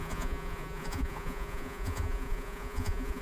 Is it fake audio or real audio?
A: fake